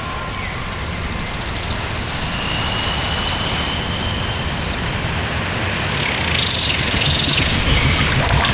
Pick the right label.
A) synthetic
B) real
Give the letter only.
B